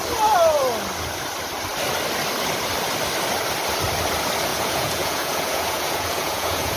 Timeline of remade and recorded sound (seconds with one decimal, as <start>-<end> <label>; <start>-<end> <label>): 0.0-4.5 recorded; 4.5-6.8 remade